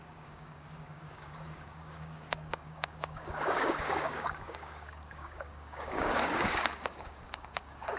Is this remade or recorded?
remade